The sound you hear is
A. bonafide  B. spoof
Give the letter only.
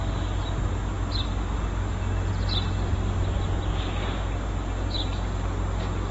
A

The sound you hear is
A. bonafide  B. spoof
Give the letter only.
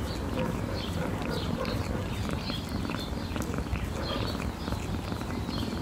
A